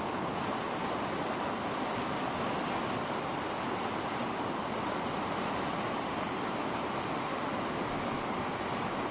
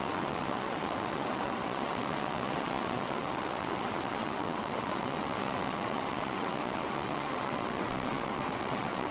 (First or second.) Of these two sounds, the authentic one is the first